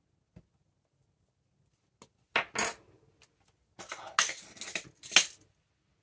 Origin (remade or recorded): recorded